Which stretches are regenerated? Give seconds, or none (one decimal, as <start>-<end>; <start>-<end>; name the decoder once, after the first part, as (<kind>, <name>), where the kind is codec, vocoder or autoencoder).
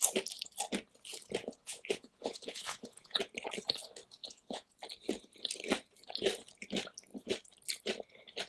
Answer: 1.4-3.2 (vocoder, Vocos); 4.2-4.8